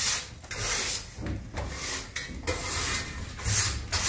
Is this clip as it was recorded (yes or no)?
yes